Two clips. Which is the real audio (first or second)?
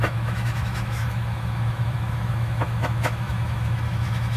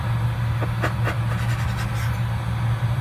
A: second